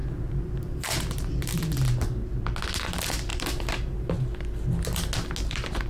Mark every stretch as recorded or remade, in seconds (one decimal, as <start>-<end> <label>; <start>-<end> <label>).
0.0-2.4 remade; 2.4-3.3 recorded; 3.3-4.1 remade; 4.1-5.9 recorded